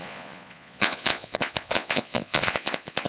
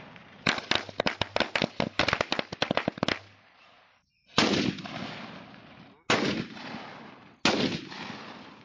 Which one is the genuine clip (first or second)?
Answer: second